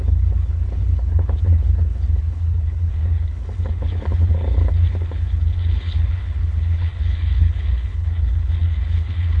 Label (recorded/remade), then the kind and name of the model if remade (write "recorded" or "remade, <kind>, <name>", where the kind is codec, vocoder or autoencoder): remade, codec, HILCodec